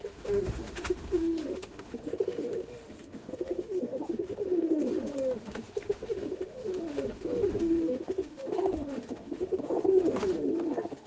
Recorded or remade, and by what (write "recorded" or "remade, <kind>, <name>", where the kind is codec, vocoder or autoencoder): remade, autoencoder, DAC-VAE